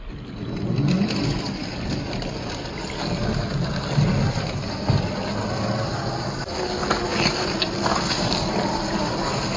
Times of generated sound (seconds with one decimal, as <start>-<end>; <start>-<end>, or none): none